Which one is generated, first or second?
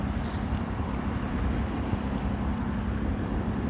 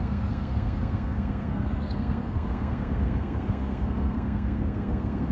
second